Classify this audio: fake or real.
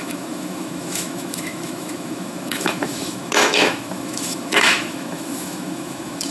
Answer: fake